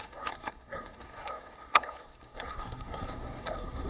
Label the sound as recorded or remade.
remade